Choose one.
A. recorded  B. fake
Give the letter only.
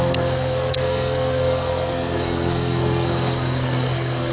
B